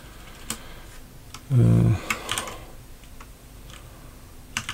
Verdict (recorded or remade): recorded